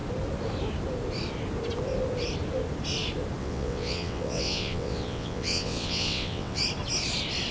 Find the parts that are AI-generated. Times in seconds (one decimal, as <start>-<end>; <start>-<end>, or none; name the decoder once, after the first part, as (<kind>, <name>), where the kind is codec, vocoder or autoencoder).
3.4-6.6 (vocoder, WaveNeXt)